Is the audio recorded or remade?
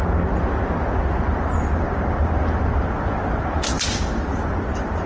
recorded